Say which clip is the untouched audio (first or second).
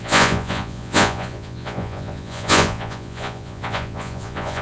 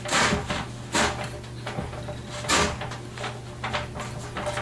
second